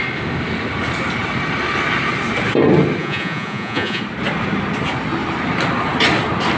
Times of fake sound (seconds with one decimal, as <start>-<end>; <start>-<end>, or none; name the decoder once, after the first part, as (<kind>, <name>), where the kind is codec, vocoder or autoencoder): 3.0-4.0 (vocoder, Vocos)